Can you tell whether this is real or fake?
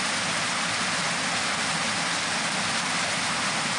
real